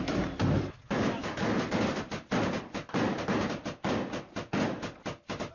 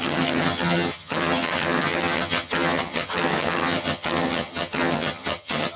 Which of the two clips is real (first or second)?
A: first